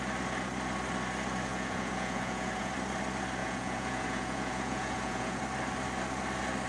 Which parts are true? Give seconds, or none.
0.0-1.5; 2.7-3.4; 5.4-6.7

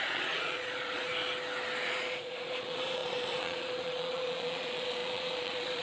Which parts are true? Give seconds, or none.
1.1-1.8

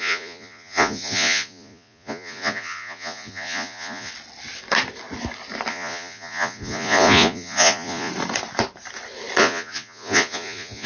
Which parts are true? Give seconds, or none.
4.1-5.7; 8.1-9.4

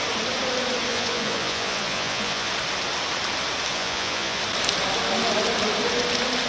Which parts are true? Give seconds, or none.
0.0-0.9; 2.5-3.7; 4.4-6.5

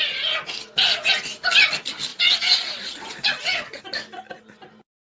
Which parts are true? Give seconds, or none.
0.0-2.1; 3.8-5.2